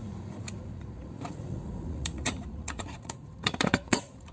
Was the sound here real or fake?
fake